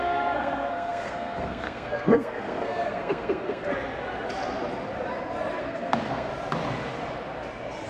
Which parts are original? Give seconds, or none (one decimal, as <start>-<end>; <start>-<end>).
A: 3.7-5.6; 6.3-7.9